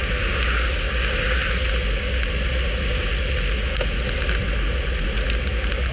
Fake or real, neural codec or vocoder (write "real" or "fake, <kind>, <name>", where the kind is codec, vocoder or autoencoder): real